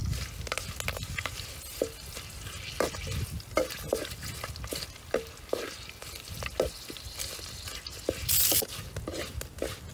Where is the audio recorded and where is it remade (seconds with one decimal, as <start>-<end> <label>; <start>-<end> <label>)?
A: 0.0-9.9 recorded